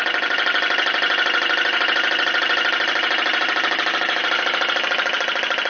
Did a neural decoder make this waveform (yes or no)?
no